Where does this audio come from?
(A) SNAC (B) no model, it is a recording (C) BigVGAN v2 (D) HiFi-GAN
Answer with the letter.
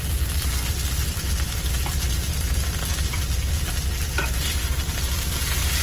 B